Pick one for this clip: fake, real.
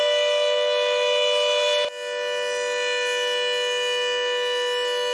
real